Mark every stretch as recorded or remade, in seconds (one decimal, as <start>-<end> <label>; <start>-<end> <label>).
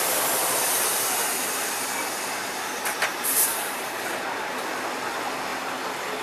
0.0-3.1 recorded; 3.1-4.0 remade; 4.0-6.2 recorded